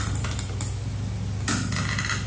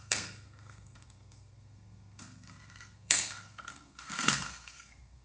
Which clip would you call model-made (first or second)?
second